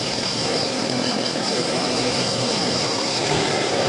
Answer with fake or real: fake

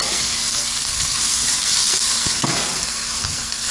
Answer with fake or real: fake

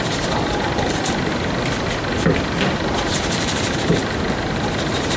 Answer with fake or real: real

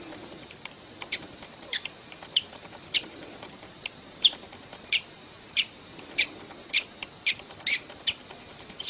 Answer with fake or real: fake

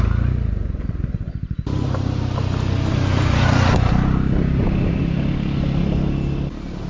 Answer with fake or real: real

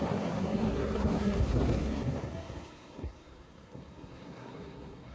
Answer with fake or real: fake